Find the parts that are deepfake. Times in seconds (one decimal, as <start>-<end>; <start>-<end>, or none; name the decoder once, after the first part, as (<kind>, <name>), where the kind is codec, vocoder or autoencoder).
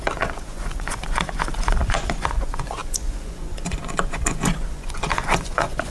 0.0-5.9 (vocoder, Vocos)